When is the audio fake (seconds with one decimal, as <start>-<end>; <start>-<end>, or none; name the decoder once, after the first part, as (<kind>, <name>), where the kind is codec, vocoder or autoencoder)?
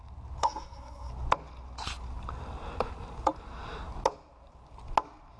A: 0.4-1.1 (codec, SNAC)